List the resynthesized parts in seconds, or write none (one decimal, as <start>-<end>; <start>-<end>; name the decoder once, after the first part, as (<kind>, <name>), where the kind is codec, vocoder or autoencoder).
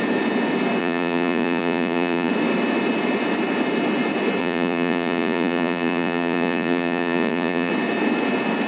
0.8-2.3 (vocoder, Vocos); 4.4-7.7